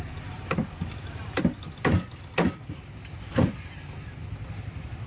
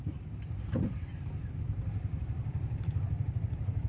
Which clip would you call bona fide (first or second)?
first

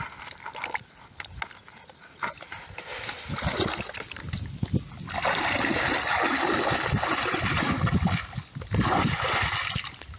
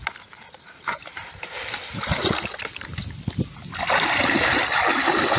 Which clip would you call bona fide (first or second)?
first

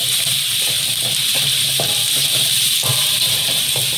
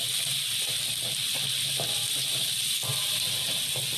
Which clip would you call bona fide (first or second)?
second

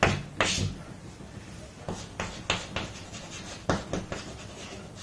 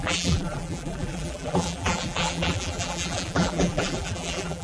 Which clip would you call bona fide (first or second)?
first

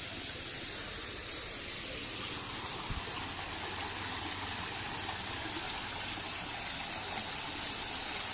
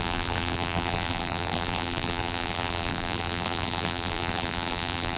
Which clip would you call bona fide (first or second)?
first